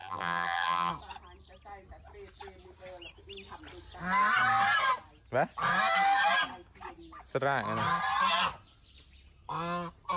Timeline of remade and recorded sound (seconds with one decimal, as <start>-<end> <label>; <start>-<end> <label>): 0.0-0.9 remade; 0.9-10.2 recorded